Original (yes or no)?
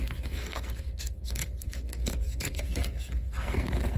no